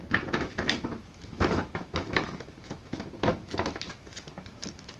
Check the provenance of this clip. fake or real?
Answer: fake